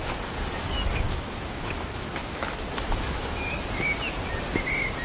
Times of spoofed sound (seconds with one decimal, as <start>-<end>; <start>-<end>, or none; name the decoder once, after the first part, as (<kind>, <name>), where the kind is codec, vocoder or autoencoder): 0.6-3.6 (autoencoder, DAC-VAE)